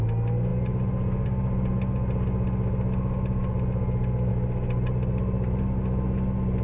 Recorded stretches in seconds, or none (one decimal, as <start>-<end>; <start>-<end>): 0.0-6.6